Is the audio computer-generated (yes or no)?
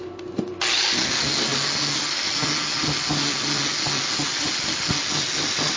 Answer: no